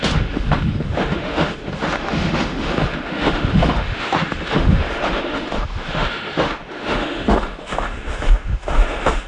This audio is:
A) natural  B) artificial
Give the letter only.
B